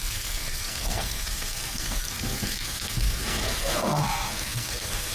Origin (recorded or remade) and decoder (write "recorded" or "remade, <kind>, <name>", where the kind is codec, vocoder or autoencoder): remade, codec, SNAC